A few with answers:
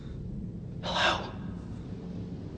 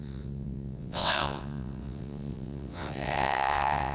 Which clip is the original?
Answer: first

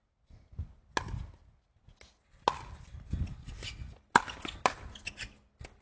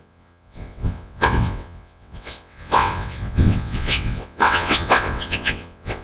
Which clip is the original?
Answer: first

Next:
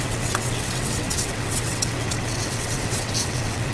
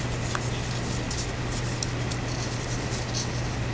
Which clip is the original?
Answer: second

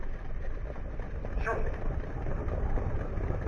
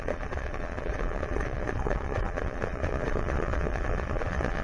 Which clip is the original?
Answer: first